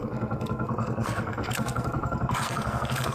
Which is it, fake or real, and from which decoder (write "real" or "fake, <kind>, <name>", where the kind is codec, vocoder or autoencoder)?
fake, codec, SNAC